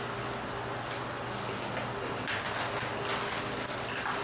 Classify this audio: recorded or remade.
recorded